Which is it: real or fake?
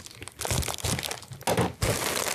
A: real